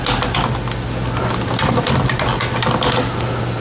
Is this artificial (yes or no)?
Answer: no